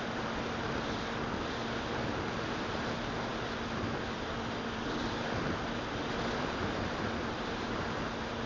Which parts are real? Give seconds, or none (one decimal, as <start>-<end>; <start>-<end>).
0.0-3.3; 8.0-8.5